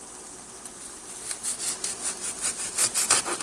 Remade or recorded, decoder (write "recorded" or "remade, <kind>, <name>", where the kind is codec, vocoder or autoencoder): recorded